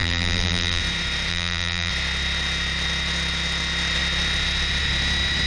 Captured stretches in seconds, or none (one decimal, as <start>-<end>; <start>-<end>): 0.8-1.3; 1.9-5.5